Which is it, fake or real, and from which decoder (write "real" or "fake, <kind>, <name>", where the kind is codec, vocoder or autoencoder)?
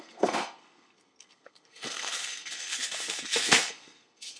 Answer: fake, codec, SNAC